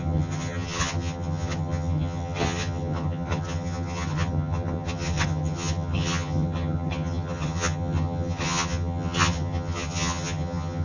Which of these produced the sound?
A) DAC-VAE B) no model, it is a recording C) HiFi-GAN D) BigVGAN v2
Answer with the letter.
C